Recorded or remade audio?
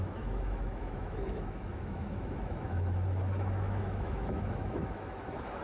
remade